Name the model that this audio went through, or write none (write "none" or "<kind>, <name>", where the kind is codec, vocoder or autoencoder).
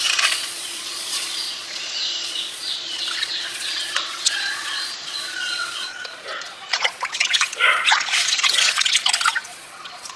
vocoder, Vocos